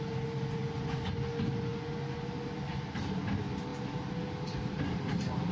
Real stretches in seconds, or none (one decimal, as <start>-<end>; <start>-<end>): 0.0-5.5